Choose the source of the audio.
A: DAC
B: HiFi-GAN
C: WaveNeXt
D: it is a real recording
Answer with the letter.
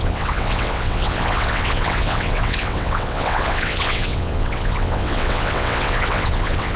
C